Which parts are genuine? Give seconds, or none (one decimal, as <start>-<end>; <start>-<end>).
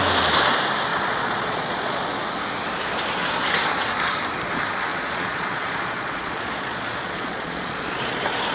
0.0-0.9; 2.0-4.9; 8.1-8.5